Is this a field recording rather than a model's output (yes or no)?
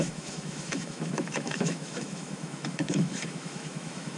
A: no